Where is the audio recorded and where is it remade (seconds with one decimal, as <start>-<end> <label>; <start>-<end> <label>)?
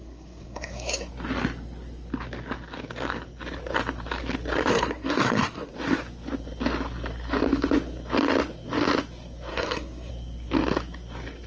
0.0-1.1 remade; 1.1-4.7 recorded; 4.7-5.7 remade; 5.7-9.5 recorded; 9.5-10.1 remade; 10.1-11.5 recorded